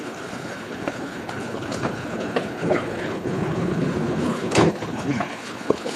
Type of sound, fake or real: fake